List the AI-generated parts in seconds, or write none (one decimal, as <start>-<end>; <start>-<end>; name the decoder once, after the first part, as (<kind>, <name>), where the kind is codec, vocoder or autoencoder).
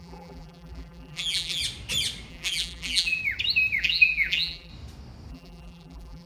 0.0-1.6 (vocoder, BigVGAN v2); 2.3-3.2; 3.8-4.7; 5.3-6.3